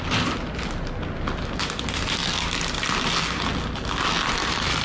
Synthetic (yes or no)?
no